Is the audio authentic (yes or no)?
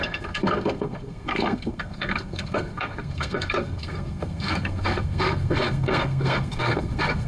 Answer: no